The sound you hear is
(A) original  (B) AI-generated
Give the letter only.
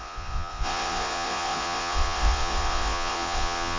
B